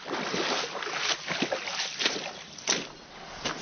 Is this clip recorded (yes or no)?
yes